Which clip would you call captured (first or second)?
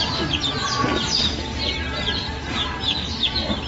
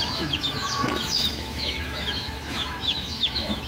first